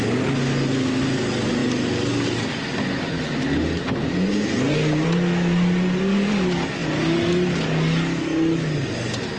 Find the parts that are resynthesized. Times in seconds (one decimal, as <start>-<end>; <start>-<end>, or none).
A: none